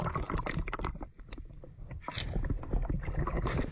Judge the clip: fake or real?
real